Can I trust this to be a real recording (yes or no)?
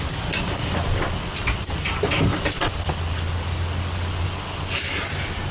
yes